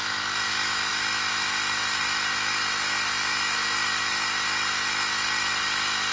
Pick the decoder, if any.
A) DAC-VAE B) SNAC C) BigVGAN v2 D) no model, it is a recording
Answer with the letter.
A